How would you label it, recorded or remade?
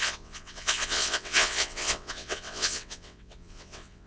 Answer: remade